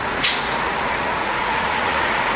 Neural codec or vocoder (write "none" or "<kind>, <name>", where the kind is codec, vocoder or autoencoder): vocoder, Vocos